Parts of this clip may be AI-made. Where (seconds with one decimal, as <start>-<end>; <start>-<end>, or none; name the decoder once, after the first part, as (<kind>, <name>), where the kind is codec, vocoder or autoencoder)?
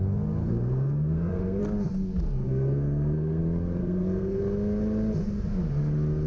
0.4-1.6 (codec, SNAC); 2.4-3.4; 3.8-4.4